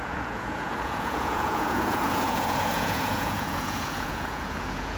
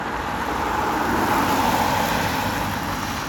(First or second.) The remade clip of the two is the first